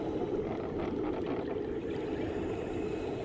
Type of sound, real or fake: real